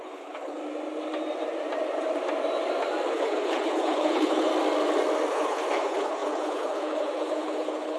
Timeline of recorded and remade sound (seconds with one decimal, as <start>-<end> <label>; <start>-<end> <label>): 0.0-0.6 remade; 0.6-3.1 recorded; 3.1-4.5 remade; 4.5-5.3 recorded; 5.3-8.0 remade

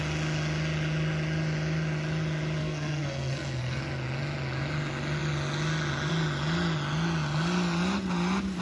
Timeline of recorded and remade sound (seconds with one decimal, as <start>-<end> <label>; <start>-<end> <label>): 0.0-2.6 recorded; 2.6-3.8 remade; 3.8-8.6 recorded

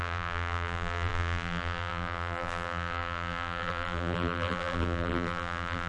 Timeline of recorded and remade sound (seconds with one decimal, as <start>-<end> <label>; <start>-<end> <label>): 0.0-5.9 remade